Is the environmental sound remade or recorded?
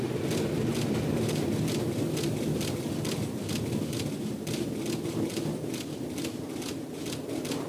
recorded